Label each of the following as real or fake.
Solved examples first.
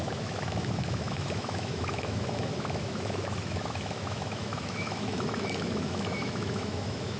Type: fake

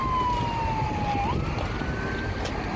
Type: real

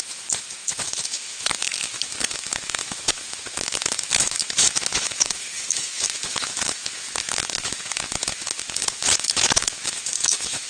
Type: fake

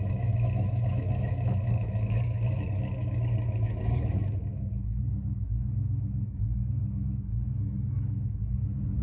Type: fake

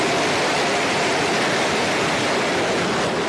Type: real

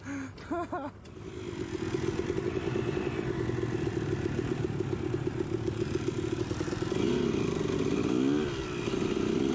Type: real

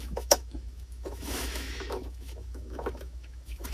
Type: fake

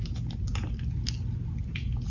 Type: real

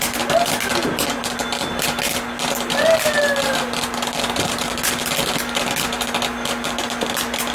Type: real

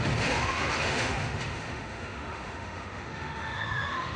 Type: fake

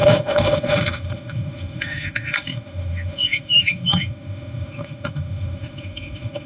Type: fake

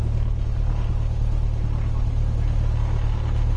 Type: real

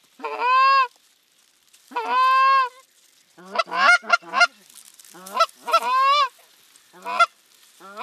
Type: real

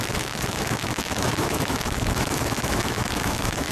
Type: fake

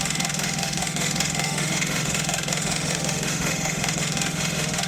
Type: fake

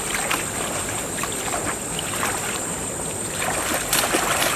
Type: real